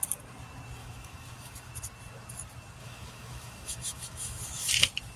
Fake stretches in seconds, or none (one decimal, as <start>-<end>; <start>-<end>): 0.8-1.7; 2.8-4.7